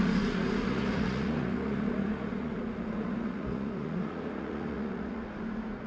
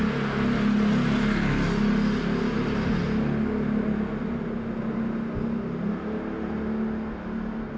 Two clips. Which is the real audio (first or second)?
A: second